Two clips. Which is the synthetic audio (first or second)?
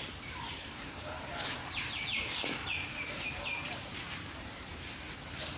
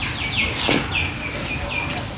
first